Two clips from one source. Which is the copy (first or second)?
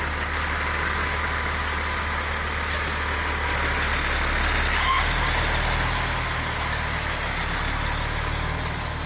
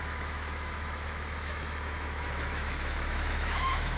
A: second